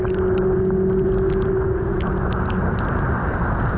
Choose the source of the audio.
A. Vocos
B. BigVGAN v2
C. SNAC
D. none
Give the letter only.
D